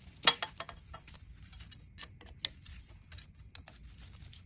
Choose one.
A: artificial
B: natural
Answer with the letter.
B